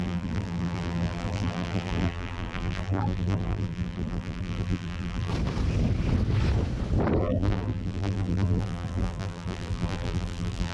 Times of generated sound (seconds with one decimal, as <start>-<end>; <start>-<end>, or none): 0.0-5.3; 7.2-10.7